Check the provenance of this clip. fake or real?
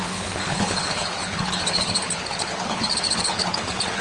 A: fake